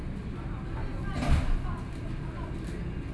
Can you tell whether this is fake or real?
real